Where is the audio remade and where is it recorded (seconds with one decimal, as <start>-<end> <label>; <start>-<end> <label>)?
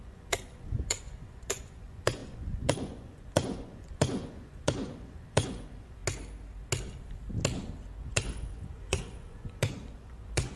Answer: 0.0-6.0 remade; 6.0-8.0 recorded; 8.0-10.6 remade